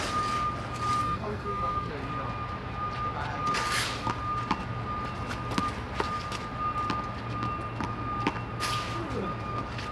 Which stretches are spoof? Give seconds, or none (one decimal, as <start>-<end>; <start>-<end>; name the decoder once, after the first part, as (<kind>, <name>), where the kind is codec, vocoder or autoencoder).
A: 1.0-1.9 (codec, SNAC)